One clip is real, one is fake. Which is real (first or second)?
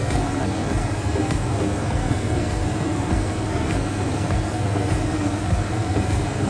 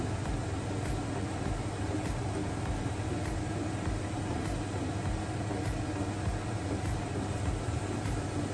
second